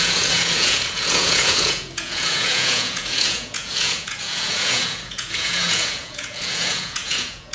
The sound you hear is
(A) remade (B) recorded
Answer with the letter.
A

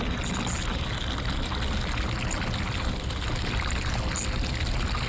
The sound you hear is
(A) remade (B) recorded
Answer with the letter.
B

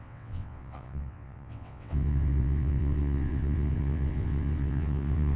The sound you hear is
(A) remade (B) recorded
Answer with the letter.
A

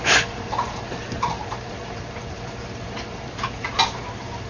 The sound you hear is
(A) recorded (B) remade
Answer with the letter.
B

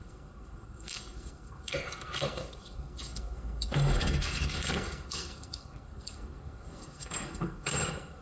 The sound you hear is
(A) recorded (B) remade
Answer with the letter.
B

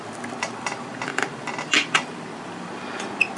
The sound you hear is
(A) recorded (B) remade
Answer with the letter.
B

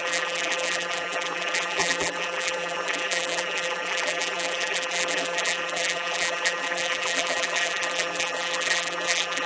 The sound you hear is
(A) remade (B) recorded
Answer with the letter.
A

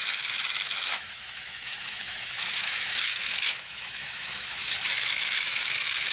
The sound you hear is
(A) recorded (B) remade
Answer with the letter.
B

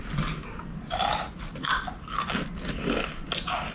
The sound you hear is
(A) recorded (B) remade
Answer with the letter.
A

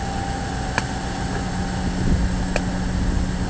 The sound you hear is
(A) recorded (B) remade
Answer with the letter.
A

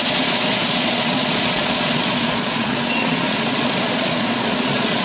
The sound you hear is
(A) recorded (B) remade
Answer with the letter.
B